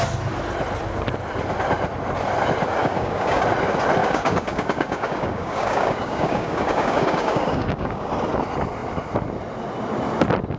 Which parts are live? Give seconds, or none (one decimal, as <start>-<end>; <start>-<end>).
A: 0.0-2.8; 3.4-4.0; 8.1-10.6

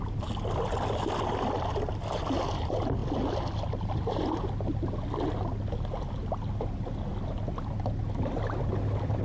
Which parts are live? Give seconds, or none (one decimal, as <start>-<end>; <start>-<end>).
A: 0.0-9.2

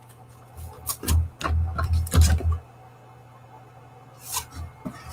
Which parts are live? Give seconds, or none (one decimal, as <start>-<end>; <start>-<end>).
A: 0.0-5.1

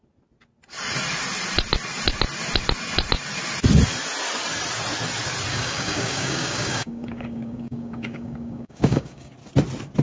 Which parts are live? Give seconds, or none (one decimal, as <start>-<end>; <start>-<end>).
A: 0.0-5.5; 9.3-10.0